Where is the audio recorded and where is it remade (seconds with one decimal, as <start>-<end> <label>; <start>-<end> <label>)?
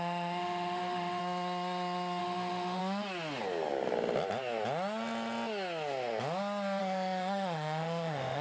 0.0-1.2 remade; 1.2-2.2 recorded; 2.2-2.8 remade; 2.8-6.8 recorded; 6.8-8.4 remade